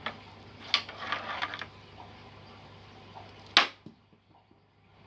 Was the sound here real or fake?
real